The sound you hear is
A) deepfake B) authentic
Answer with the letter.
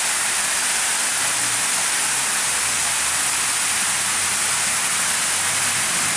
B